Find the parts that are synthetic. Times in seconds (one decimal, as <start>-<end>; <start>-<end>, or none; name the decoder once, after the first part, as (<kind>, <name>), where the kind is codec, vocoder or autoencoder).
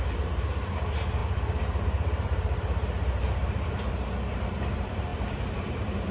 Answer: 0.0-6.1 (vocoder, BigVGAN v2)